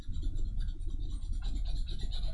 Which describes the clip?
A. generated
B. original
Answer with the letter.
B